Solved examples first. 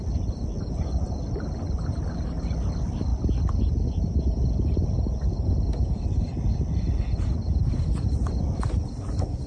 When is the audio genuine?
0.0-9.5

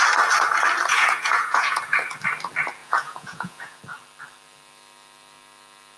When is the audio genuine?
0.0-0.9; 1.8-2.8; 3.8-6.0